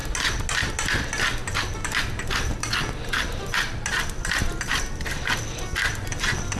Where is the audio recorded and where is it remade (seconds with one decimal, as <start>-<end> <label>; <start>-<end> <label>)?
0.0-6.6 recorded